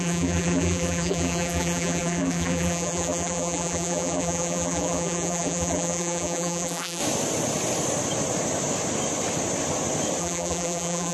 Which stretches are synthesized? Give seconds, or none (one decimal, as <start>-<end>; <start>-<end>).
0.0-7.0; 10.2-11.1

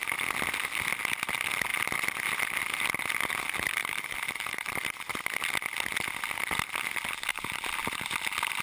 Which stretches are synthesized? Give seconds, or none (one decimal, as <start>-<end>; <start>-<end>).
3.8-5.1; 7.3-8.1

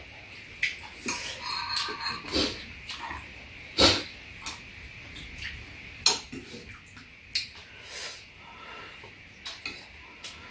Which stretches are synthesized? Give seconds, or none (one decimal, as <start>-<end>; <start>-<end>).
none

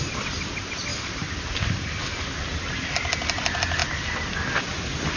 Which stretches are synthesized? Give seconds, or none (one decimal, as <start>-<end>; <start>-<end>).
0.9-2.9

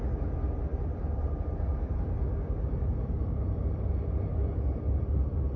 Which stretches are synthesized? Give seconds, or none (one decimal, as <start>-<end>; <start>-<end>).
0.7-3.9

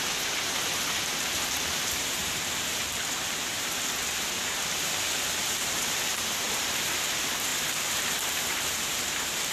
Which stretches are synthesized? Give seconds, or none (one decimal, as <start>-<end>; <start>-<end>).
0.0-9.5

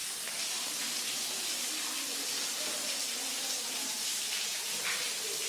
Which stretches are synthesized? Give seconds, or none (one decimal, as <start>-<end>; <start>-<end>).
0.0-1.4; 3.3-5.1